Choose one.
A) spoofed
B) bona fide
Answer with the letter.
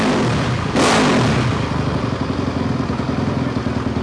B